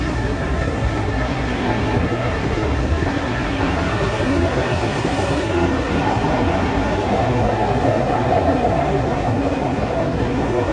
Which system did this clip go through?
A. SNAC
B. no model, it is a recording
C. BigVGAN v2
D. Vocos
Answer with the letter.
A